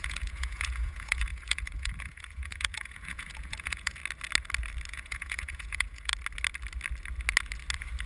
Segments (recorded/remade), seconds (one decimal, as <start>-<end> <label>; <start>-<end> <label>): 0.0-4.0 remade; 4.0-4.9 recorded; 4.9-6.1 remade; 6.1-8.1 recorded